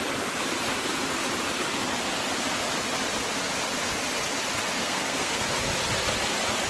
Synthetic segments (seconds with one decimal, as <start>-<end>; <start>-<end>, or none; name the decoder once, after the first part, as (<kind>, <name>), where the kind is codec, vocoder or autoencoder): 4.8-5.4 (codec, SNAC)